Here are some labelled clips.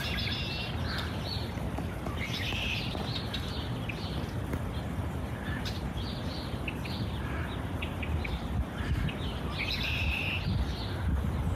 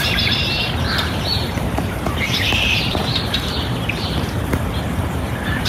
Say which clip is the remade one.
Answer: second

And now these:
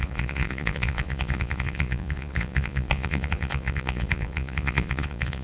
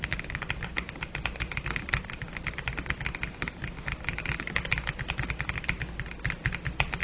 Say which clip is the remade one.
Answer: first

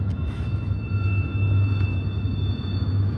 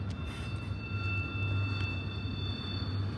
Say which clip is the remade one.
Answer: first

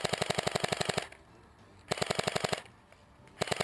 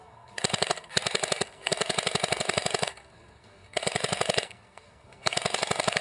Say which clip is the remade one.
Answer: second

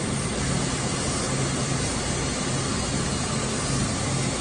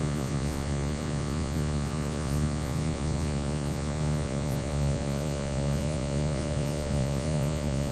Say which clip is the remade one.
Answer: second